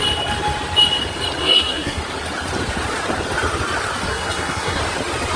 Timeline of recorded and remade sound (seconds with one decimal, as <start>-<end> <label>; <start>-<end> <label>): 0.0-1.4 recorded; 1.4-2.0 remade; 2.0-4.1 recorded; 4.1-4.8 remade; 4.8-5.4 recorded